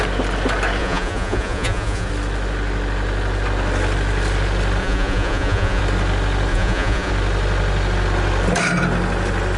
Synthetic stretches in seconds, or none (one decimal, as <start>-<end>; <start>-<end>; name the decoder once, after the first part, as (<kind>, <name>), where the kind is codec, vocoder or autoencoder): 0.8-2.1 (vocoder, Vocos); 4.8-5.8; 6.5-7.1